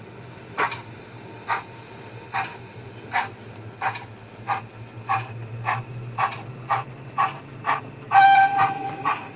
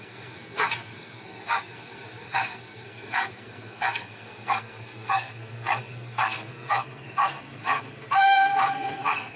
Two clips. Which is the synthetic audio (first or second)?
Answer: second